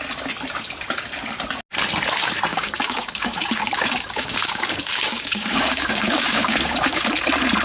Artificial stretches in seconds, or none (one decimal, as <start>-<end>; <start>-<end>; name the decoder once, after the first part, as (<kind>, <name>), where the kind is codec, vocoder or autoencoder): 2.5-7.1 (codec, DAC)